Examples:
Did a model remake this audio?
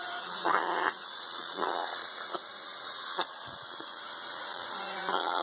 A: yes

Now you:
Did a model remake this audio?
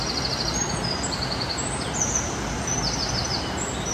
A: no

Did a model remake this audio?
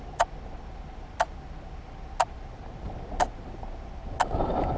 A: no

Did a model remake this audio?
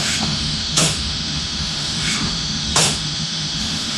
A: yes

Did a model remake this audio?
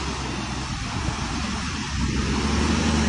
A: no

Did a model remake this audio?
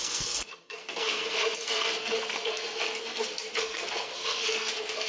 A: yes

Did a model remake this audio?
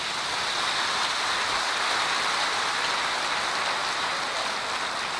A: no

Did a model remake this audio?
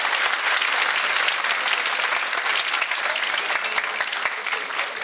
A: no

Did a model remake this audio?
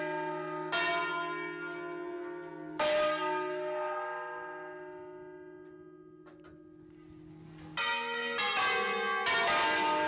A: no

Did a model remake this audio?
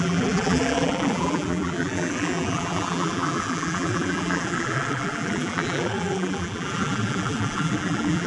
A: yes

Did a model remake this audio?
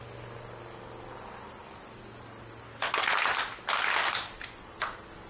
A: no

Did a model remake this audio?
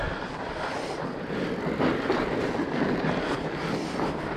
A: no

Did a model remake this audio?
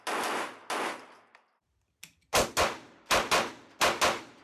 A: no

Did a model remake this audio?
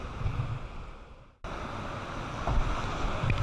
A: no